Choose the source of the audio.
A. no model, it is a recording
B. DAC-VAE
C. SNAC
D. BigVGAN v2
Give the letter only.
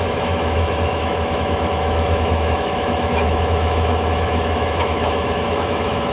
B